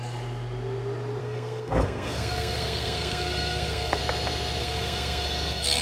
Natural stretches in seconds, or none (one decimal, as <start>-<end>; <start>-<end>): 0.0-1.2; 4.0-4.6